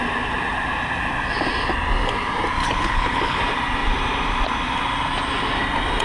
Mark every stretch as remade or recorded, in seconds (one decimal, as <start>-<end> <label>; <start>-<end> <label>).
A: 0.0-2.6 recorded; 2.6-3.4 remade; 3.4-6.0 recorded